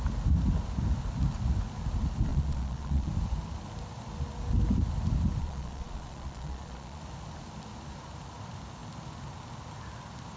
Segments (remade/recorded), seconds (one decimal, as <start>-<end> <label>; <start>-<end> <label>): 0.0-2.3 recorded; 2.3-3.1 remade; 3.1-5.4 recorded; 5.4-7.0 remade; 7.0-10.4 recorded